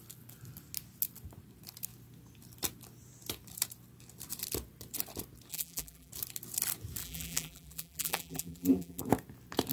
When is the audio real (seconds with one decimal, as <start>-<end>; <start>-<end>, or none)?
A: 0.0-5.5; 6.1-7.0; 9.0-9.7

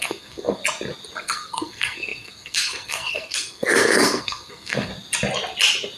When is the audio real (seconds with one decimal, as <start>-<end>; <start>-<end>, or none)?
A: 0.6-1.2; 4.9-6.0

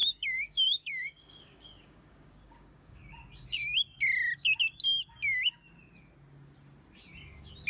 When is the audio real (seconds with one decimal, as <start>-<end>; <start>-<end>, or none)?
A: 3.2-7.7

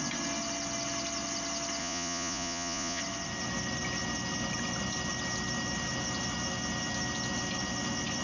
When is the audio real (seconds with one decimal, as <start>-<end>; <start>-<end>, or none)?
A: 0.0-1.8; 3.0-8.2

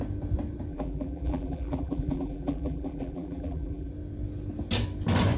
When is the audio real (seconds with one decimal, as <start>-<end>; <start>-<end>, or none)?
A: 0.0-0.7; 3.9-5.4

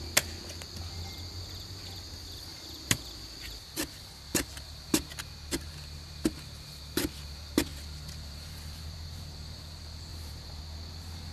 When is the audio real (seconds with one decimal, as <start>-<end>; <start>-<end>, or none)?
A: 0.0-2.5; 3.1-4.3; 5.1-7.7; 9.6-10.1; 10.6-11.3

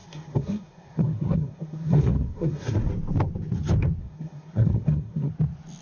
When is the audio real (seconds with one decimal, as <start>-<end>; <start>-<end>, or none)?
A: 2.9-4.0; 5.3-5.8